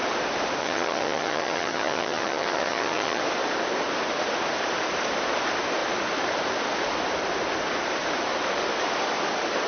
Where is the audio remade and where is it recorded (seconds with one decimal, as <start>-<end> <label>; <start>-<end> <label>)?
0.0-0.6 recorded; 0.6-3.2 remade; 3.2-9.7 recorded